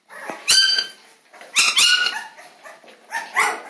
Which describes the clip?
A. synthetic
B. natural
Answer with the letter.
B